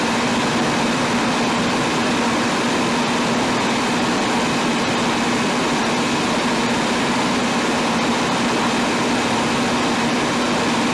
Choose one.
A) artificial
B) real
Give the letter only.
B